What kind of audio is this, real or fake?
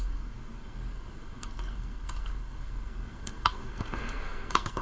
fake